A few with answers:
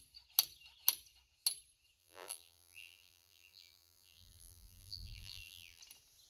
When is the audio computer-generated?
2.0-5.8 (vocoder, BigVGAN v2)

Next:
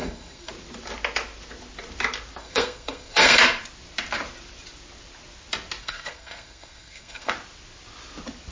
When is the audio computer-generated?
0.0-0.5 (codec, SNAC); 2.4-3.4; 5.8-7.3

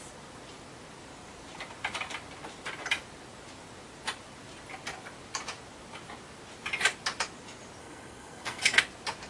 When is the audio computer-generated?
7.8-8.8 (codec, SNAC)

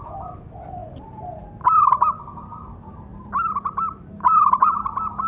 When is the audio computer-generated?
3.1-4.1 (vocoder, BigVGAN v2)